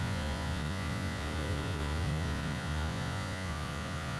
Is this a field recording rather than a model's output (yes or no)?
no